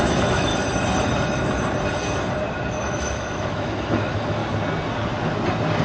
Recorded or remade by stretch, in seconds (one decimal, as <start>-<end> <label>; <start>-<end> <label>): 0.0-0.5 remade; 0.5-2.8 recorded; 2.8-4.4 remade; 4.4-5.8 recorded